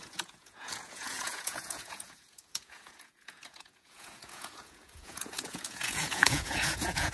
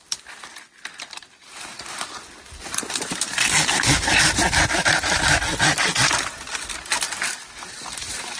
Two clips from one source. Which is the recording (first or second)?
second